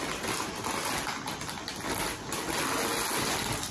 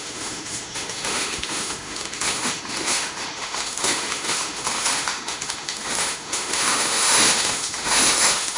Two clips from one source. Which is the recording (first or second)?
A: first